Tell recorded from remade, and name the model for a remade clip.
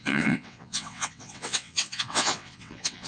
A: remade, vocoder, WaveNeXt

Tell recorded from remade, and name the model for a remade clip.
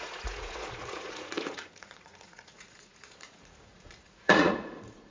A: remade, vocoder, Vocos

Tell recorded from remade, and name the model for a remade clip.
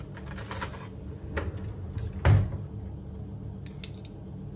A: recorded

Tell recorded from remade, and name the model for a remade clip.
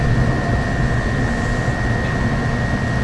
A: recorded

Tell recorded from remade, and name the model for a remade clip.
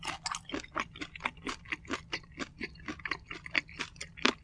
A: recorded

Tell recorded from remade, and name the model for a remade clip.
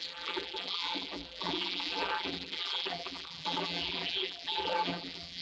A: remade, vocoder, BigVGAN v2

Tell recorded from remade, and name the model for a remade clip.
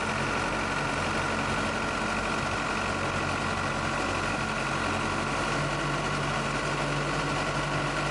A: recorded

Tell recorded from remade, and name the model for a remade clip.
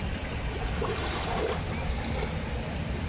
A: recorded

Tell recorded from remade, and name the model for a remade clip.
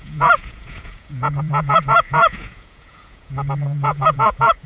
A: remade, vocoder, Vocos